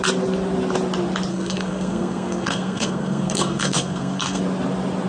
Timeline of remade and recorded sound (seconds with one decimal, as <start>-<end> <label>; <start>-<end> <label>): 0.0-1.3 recorded; 1.3-4.4 remade; 4.4-5.1 recorded